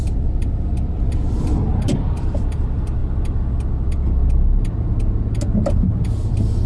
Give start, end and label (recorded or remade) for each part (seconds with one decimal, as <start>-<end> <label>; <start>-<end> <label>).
0.0-3.0 remade; 3.0-3.7 recorded; 3.7-4.2 remade; 4.2-6.3 recorded; 6.3-6.7 remade